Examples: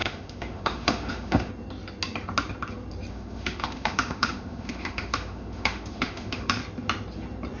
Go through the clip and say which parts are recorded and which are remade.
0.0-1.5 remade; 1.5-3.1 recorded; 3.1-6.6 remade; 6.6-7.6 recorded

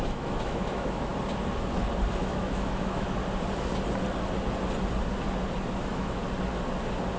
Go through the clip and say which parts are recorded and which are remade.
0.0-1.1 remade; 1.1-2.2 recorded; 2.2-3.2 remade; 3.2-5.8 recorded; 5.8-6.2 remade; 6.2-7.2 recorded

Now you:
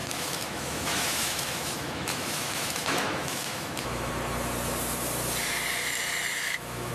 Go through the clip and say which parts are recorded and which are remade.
0.0-4.1 remade; 4.1-6.3 recorded; 6.3-6.9 remade

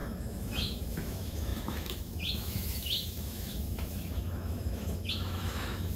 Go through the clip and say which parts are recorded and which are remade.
0.0-6.0 remade